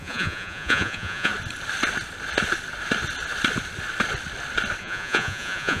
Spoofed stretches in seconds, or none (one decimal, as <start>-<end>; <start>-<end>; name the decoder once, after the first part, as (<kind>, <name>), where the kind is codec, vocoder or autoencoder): 0.0-1.3 (vocoder, Vocos); 4.8-5.8